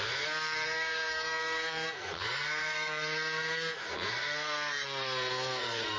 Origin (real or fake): fake